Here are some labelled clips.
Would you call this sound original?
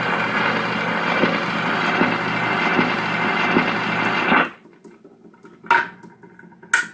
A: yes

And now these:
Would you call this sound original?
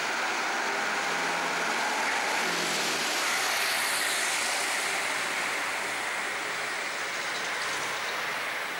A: yes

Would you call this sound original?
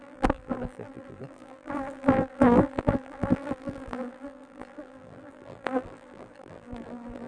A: no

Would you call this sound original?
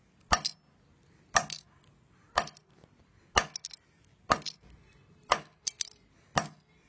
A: yes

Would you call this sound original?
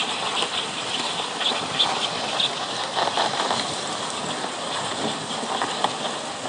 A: yes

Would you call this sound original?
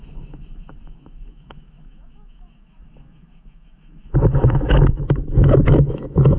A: no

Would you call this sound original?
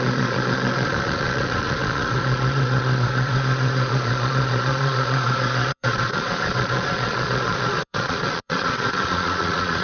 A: no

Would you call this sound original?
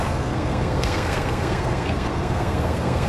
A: no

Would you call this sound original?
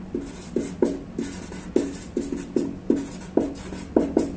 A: yes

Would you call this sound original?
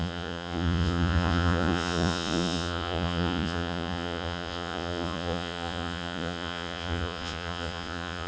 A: no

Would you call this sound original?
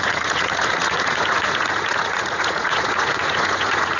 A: no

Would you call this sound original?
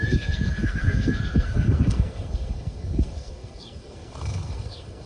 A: no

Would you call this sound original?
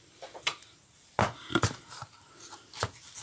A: yes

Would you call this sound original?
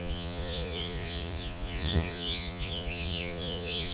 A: no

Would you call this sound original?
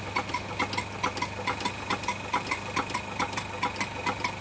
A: yes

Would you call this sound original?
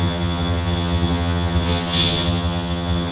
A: no